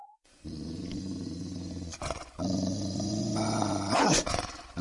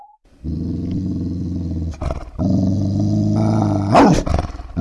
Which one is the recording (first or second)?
second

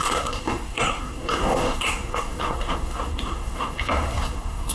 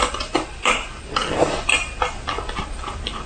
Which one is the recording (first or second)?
second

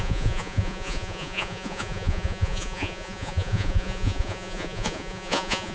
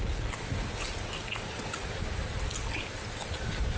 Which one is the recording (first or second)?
second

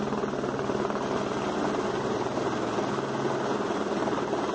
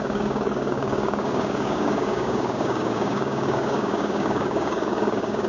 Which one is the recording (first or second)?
first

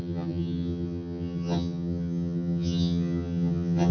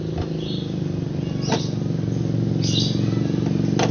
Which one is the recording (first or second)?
second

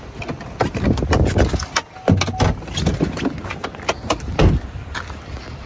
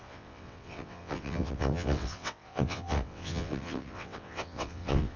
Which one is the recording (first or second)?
first